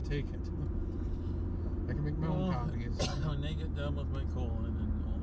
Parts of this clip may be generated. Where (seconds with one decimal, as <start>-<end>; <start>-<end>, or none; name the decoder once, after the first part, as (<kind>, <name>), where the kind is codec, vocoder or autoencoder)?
none